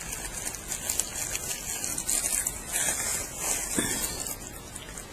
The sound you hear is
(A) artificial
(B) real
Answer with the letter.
B